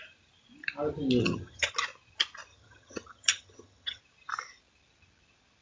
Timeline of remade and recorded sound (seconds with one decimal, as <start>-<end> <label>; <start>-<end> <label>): 0.0-1.2 recorded; 1.2-1.7 remade; 1.7-2.5 recorded; 2.5-4.0 remade; 4.0-5.6 recorded